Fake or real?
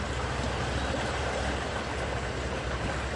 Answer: real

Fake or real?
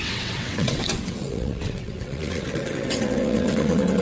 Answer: fake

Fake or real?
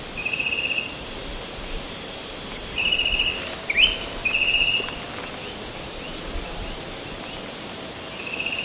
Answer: real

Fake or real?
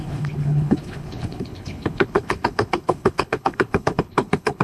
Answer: fake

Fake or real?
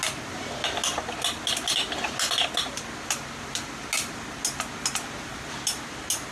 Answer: real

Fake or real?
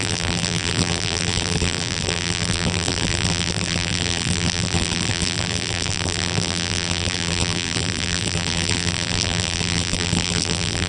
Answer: fake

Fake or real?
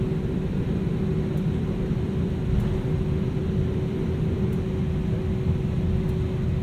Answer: real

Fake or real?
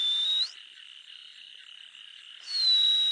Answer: real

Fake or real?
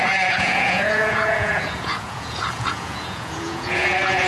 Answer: fake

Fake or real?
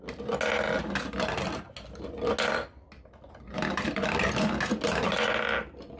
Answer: real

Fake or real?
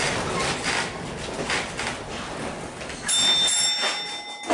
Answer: real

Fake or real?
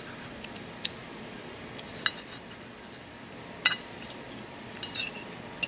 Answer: real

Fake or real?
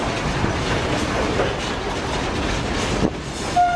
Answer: real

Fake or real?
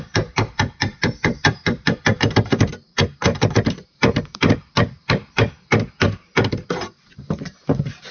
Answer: fake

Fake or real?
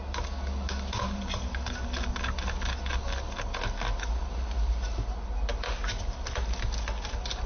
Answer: real